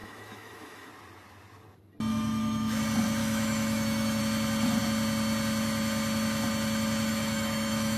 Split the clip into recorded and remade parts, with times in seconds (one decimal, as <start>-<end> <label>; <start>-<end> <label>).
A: 0.0-0.9 remade; 0.9-2.1 recorded; 2.1-2.8 remade; 2.8-3.2 recorded; 3.2-4.2 remade; 4.2-7.1 recorded; 7.1-8.0 remade